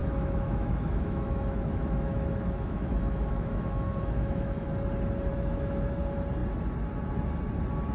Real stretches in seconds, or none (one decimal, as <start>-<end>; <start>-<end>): 4.7-5.3; 6.0-7.9